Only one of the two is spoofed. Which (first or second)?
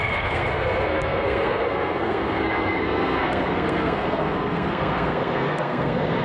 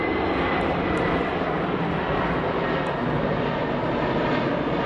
first